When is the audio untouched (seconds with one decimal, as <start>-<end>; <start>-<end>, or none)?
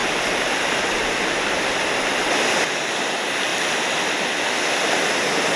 3.1-5.6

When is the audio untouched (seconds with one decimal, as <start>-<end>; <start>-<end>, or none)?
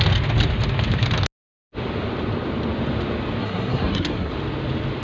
0.0-3.4; 4.3-5.0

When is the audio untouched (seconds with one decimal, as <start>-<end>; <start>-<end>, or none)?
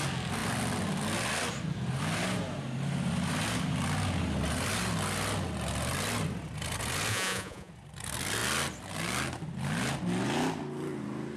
0.0-7.1; 7.7-11.4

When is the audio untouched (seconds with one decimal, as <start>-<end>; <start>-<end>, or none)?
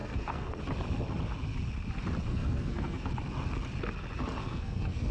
0.6-2.3; 3.1-4.4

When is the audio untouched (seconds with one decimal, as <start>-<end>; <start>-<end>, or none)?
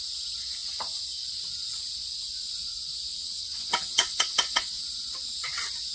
0.0-3.1; 4.8-5.9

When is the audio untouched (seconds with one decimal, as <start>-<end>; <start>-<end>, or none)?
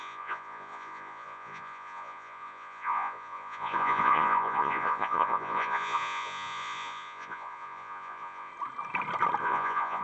8.5-9.4